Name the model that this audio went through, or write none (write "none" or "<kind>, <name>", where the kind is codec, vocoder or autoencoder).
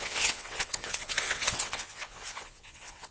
vocoder, WaveNeXt